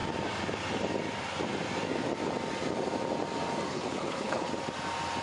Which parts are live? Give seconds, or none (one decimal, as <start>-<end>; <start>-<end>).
0.0-3.7; 4.5-5.2